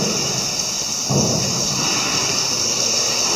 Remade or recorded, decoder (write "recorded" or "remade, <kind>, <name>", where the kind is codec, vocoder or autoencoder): recorded